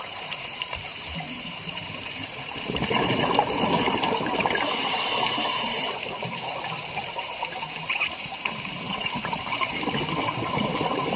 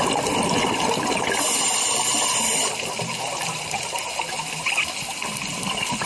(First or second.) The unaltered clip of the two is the second